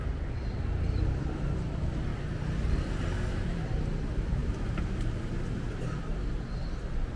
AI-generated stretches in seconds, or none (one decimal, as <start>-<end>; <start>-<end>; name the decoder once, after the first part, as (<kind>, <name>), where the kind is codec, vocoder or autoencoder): 2.1-3.0 (vocoder, BigVGAN v2); 4.4-5.6